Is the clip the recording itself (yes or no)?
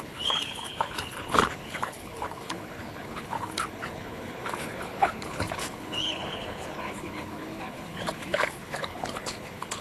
no